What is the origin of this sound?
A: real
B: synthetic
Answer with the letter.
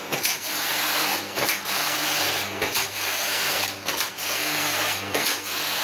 B